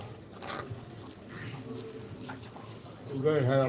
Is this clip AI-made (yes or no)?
no